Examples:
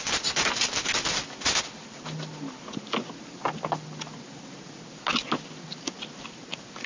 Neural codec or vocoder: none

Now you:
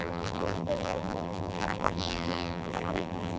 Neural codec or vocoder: vocoder, BigVGAN v2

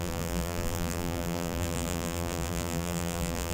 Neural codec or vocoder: vocoder, BigVGAN v2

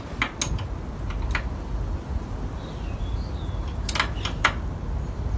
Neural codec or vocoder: none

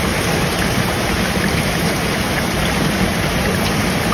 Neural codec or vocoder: vocoder, BigVGAN v2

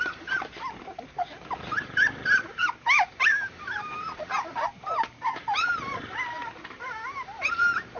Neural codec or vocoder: vocoder, BigVGAN v2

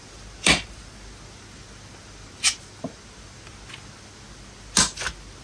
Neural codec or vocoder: none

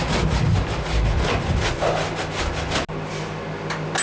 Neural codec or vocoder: none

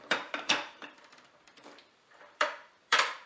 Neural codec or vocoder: vocoder, BigVGAN v2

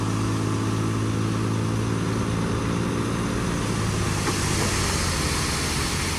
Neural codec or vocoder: none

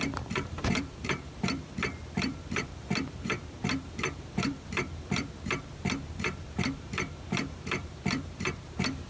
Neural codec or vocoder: vocoder, BigVGAN v2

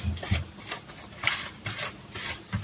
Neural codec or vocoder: vocoder, BigVGAN v2